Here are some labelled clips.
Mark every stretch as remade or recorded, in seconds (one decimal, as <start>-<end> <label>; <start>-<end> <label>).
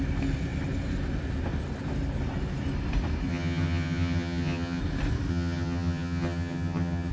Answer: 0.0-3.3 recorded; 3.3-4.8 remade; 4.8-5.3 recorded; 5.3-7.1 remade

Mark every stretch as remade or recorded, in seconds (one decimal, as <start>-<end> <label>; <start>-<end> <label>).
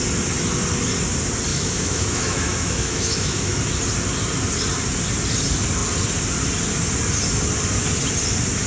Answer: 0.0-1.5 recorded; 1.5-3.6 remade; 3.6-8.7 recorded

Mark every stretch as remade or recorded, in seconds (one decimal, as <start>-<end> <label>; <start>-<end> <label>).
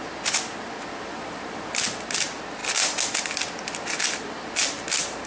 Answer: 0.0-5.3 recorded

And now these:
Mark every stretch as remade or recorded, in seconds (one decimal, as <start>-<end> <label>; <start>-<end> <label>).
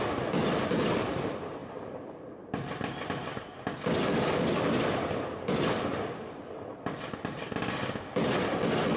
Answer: 0.0-9.0 recorded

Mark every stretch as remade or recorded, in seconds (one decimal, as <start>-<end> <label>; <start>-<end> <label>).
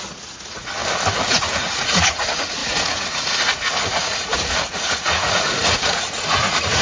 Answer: 0.0-0.8 remade; 0.8-1.3 recorded; 1.3-6.8 remade